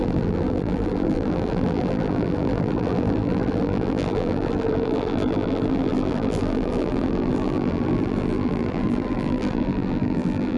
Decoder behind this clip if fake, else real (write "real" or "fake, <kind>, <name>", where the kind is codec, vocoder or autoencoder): fake, vocoder, BigVGAN v2